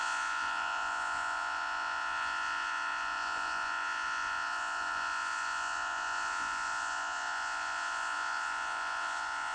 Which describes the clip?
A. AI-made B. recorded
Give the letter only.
A